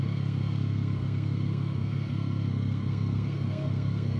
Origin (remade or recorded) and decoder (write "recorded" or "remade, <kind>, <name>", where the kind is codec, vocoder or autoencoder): remade, codec, SNAC